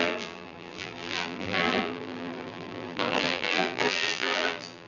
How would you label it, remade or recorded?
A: remade